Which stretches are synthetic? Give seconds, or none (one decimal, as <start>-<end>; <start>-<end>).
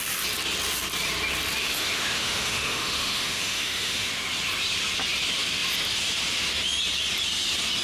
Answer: 1.6-4.1